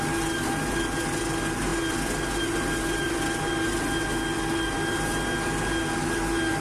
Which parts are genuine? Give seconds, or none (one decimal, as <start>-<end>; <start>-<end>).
0.0-6.6